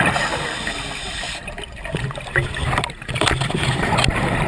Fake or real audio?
real